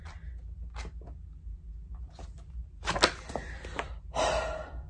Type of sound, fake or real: real